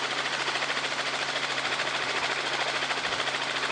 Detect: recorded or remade recorded